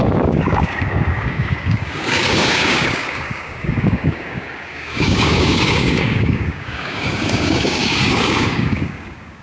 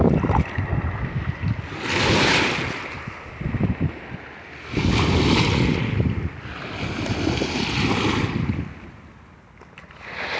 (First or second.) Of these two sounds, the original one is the second